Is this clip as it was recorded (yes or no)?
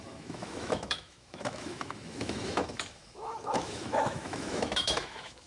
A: no